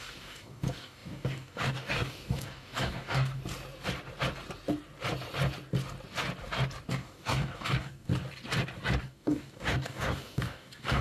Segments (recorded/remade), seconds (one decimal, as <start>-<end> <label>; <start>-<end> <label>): 0.0-3.4 remade; 3.4-6.9 recorded; 6.9-8.1 remade; 8.1-9.0 recorded; 9.0-11.0 remade